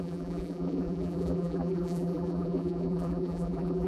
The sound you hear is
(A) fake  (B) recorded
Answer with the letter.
A